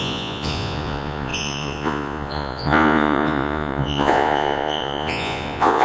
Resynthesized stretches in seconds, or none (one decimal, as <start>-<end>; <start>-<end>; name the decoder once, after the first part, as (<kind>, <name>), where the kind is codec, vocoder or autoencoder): 0.0-5.8 (vocoder, Vocos)

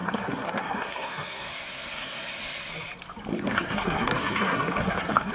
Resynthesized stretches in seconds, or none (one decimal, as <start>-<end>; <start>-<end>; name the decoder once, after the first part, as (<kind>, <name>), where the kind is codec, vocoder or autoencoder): 0.0-2.7 (codec, SNAC); 3.3-5.3

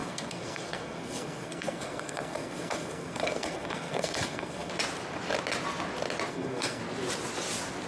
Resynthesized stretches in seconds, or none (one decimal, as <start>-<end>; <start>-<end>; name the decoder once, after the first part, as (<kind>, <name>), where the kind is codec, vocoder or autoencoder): 0.0-4.7 (codec, SNAC); 6.3-6.8

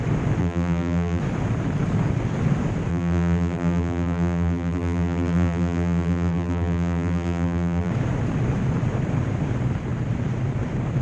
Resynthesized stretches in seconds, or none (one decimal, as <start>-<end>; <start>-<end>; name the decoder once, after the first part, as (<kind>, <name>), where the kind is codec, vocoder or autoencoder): 0.4-1.2 (vocoder, BigVGAN v2); 2.9-7.9